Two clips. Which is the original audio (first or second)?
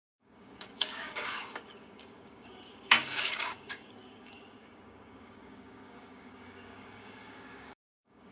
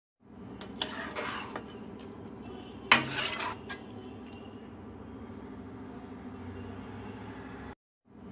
second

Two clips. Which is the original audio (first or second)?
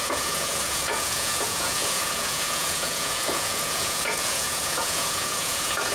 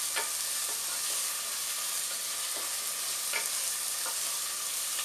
second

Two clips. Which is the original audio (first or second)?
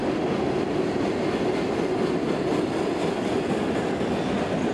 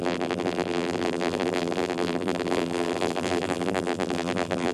first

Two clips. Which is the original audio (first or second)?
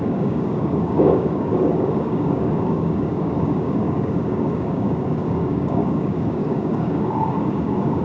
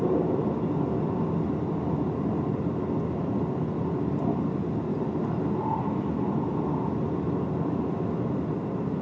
second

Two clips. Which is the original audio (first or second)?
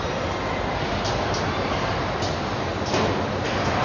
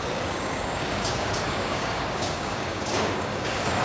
first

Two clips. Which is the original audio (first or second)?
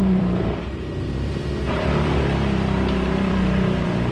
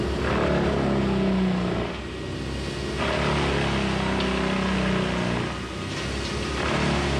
second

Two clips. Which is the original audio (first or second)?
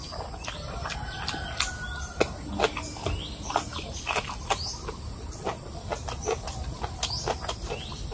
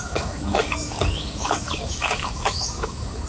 first